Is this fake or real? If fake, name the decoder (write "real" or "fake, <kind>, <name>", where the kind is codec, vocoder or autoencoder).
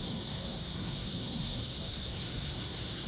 fake, codec, SNAC